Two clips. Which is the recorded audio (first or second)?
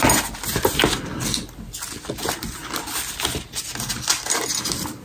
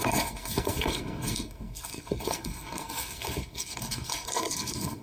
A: first